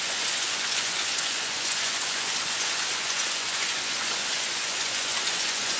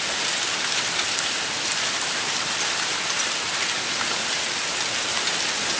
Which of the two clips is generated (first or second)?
first